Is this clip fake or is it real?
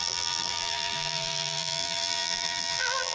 fake